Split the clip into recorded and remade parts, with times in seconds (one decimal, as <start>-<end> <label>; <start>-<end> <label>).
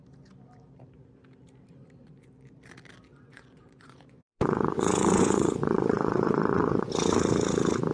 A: 0.0-3.1 recorded; 3.1-6.9 remade; 6.9-7.9 recorded